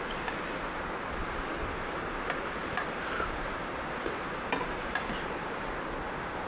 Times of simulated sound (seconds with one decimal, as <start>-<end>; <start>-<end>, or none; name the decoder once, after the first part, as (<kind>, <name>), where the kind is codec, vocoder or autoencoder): none